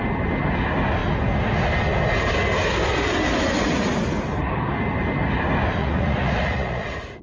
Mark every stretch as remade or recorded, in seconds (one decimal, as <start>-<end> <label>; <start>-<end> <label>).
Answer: 0.0-5.8 recorded; 5.8-7.2 remade